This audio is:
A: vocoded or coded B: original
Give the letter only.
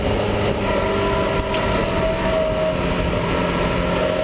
B